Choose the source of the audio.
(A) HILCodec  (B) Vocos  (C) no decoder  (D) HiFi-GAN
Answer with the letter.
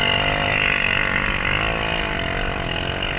C